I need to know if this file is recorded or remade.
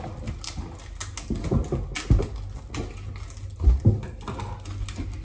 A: recorded